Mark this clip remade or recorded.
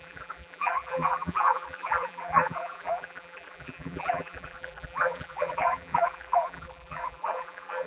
remade